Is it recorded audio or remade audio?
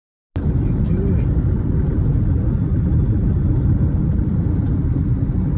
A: recorded